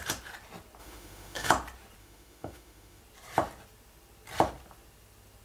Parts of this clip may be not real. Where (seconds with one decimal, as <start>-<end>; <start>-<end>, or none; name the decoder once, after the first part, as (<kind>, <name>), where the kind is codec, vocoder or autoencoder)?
0.8-1.5 (autoencoder, DAC-VAE); 2.0-3.0